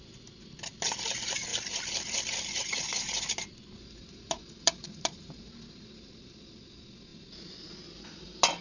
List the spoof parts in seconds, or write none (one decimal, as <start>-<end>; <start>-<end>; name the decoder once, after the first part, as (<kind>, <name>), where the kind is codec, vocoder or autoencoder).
1.5-6.4 (vocoder, BigVGAN v2); 7.1-7.9